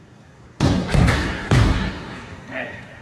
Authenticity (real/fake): fake